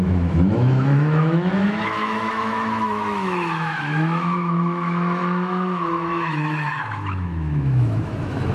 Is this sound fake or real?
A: fake